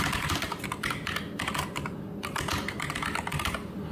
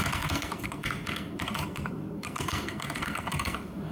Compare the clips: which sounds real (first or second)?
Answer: first